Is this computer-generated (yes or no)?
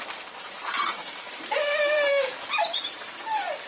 yes